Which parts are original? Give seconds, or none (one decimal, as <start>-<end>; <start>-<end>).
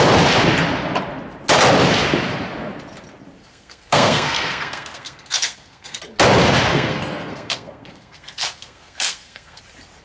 0.0-3.4; 6.0-6.7; 9.6-10.0